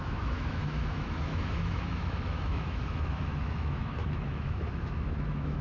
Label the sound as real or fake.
fake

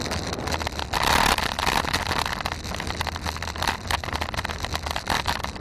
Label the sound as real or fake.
real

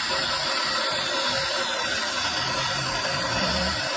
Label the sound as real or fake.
real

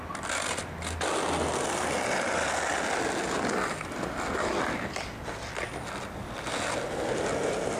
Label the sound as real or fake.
real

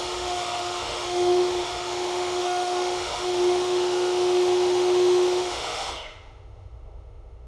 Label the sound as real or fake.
fake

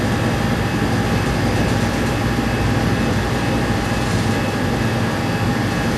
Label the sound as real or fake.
real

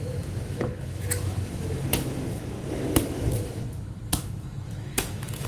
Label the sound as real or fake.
fake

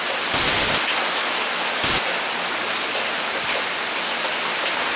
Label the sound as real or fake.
real